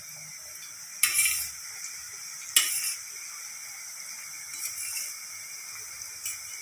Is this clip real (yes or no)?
yes